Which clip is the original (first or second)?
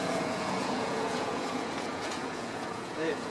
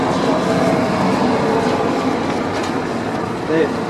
second